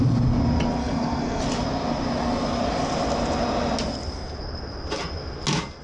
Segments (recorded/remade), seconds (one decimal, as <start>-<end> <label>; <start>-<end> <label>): 0.0-0.8 recorded; 0.8-1.4 remade; 1.4-5.8 recorded